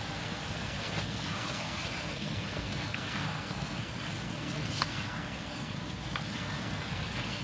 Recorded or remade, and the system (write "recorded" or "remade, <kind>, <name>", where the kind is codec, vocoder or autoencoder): remade, codec, SNAC